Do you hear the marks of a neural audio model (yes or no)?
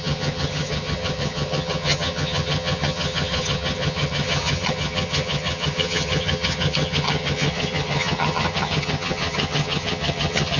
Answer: yes